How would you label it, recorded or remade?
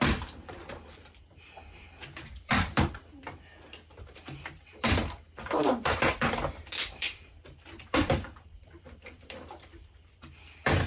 remade